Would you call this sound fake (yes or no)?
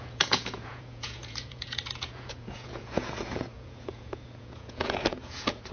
yes